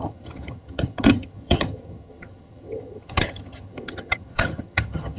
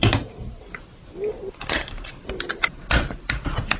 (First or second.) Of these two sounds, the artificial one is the first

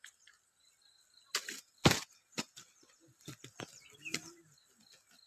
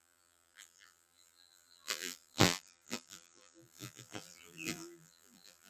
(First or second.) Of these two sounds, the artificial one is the second